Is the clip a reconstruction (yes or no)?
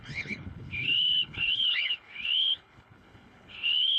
yes